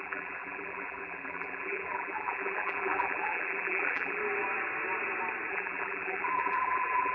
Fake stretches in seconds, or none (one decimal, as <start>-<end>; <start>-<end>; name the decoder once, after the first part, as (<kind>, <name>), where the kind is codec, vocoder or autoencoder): 0.0-4.2 (vocoder, BigVGAN v2); 5.5-7.1